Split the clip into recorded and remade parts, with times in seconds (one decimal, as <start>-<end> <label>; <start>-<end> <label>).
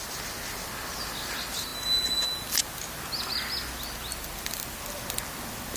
0.0-5.8 recorded